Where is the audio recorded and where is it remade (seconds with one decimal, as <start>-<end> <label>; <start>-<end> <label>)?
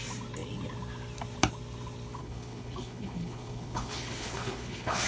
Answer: 0.0-2.2 recorded; 2.2-5.1 remade